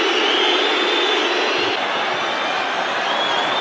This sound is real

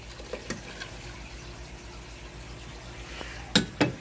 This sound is real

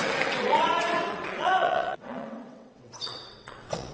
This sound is fake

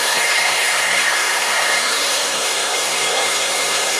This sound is fake